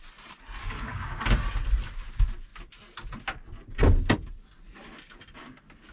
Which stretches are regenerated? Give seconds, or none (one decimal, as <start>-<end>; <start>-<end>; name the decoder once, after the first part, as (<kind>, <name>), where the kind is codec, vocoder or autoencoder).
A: 0.6-1.2 (codec, DAC)